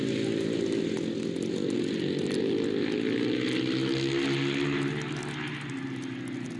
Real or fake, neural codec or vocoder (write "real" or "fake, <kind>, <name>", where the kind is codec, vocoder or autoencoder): real